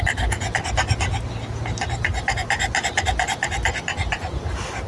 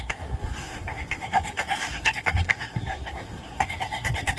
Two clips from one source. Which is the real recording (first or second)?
first